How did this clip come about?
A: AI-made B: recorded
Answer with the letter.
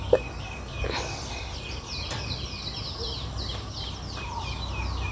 B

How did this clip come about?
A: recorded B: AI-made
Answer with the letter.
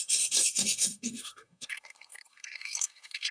B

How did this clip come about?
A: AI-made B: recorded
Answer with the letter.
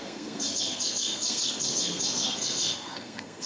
A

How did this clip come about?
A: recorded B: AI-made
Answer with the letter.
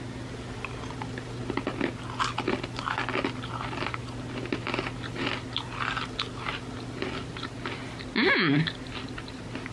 A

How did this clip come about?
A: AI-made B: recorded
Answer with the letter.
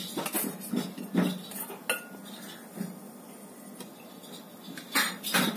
B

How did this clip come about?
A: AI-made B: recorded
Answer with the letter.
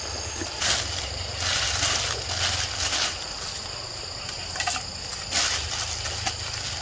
B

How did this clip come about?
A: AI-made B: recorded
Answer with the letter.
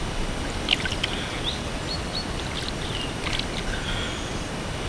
B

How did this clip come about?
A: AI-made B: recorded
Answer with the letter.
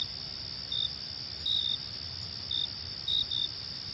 B